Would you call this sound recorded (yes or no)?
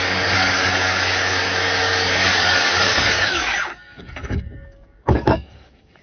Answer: no